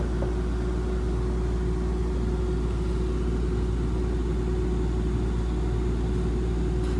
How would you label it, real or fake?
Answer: real